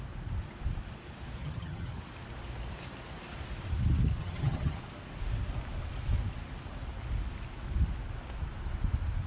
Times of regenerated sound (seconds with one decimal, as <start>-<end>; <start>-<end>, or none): 1.4-2.0; 4.2-4.8